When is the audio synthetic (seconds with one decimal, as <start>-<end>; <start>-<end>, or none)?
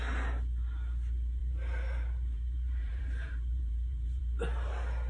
1.4-4.2